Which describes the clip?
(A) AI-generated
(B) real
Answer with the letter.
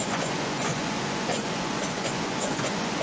A